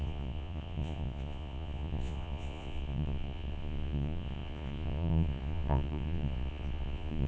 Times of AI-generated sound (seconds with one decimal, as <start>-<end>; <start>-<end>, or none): 0.0-7.3